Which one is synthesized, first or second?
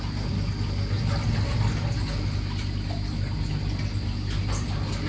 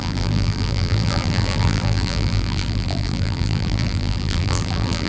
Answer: second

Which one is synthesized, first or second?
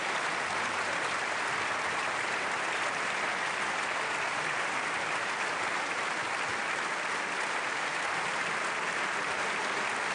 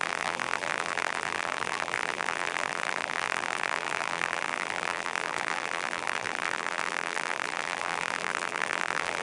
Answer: second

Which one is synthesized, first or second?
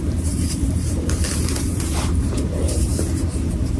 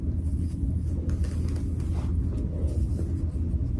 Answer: first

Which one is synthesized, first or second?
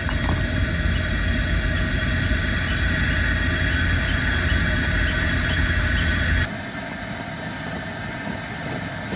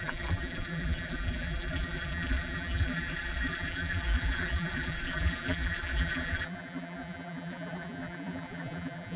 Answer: second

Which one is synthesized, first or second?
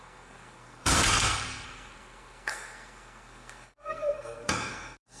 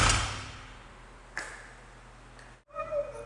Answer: first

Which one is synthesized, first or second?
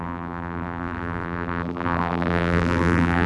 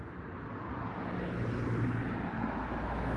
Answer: first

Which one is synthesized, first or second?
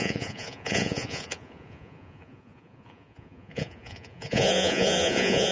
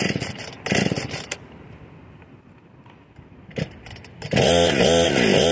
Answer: first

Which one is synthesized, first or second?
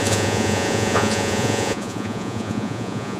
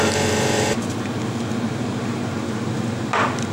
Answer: first